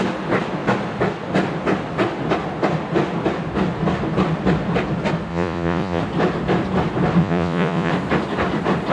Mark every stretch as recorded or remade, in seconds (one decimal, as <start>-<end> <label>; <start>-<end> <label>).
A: 0.0-5.3 recorded; 5.3-6.0 remade; 6.0-7.2 recorded; 7.2-7.9 remade; 7.9-8.9 recorded

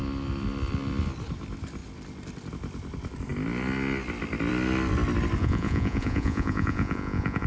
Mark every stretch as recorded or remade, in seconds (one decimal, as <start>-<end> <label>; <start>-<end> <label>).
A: 0.0-5.4 recorded; 5.4-7.5 remade

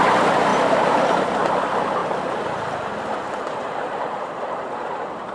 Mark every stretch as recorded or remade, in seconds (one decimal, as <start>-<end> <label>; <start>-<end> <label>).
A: 0.0-0.5 recorded; 0.5-1.3 remade; 1.3-5.3 recorded

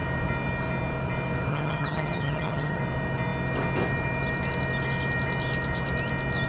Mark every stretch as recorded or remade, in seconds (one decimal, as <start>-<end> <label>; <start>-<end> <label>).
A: 0.0-1.5 recorded; 1.5-2.8 remade; 2.8-6.5 recorded

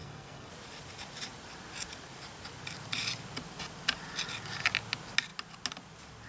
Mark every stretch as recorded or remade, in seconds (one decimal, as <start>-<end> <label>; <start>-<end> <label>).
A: 0.0-0.5 remade; 0.5-6.3 recorded

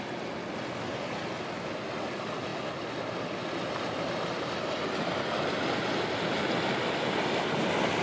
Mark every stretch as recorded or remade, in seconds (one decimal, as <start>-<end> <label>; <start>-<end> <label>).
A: 0.0-8.0 recorded